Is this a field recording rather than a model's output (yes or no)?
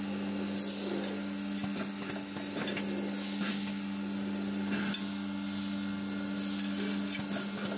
yes